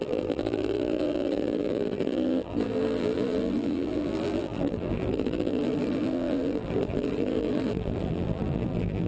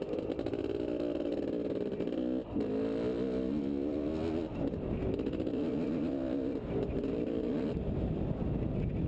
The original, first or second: second